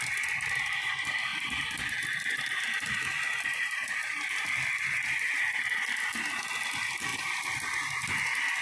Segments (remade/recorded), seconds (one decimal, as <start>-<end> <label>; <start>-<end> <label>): 0.0-1.3 recorded; 1.3-2.9 remade; 2.9-4.0 recorded; 4.0-6.0 remade; 6.0-7.1 recorded; 7.1-7.9 remade; 7.9-8.6 recorded